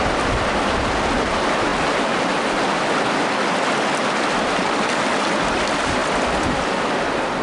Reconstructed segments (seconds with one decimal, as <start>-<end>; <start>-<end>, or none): none